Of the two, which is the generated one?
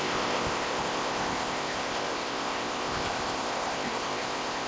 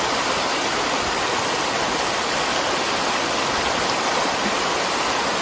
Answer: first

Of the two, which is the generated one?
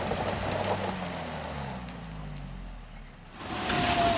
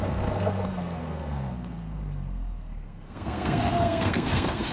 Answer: second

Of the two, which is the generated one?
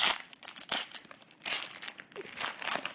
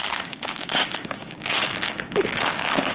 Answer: second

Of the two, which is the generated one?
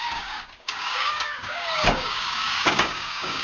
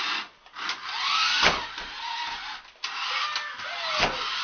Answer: first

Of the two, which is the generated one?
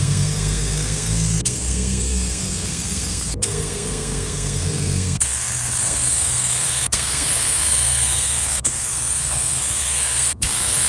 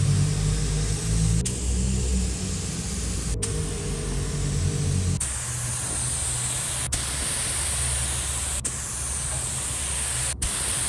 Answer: first